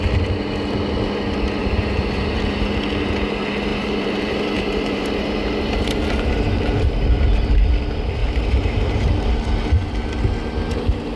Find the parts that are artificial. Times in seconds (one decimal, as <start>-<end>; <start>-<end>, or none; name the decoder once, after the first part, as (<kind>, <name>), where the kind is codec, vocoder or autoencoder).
1.6-2.4 (vocoder, BigVGAN v2); 3.7-7.5; 8.2-9.0